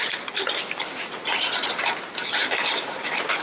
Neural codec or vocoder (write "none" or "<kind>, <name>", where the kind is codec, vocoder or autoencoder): none